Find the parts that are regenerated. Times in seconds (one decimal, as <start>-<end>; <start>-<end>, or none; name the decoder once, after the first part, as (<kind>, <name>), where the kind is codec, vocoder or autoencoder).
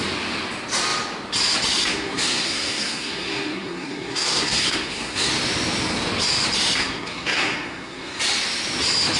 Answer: 1.9-5.3 (codec, SNAC); 6.8-8.2